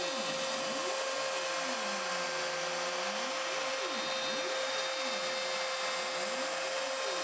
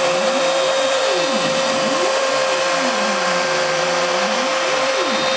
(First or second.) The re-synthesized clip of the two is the second